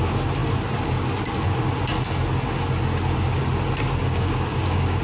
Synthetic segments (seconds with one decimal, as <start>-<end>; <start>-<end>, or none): 4.0-5.0